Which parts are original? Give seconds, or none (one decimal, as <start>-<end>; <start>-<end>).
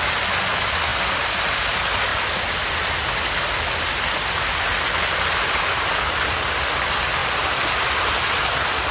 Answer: 0.0-8.9